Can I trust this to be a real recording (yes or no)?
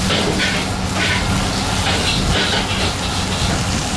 yes